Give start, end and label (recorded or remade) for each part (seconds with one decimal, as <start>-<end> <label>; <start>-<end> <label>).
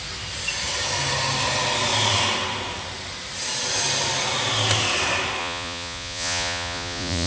0.0-5.4 recorded; 5.4-7.3 remade